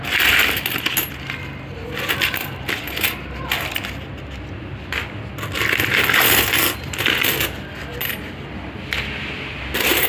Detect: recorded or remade recorded